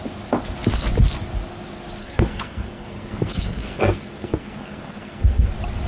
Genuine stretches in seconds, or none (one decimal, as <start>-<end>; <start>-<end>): 0.0-2.0; 5.5-5.9